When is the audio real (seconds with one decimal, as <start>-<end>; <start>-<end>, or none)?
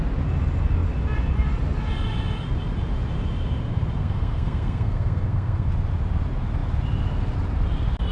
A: 0.0-4.0; 5.7-8.1